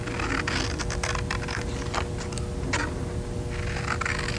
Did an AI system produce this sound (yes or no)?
no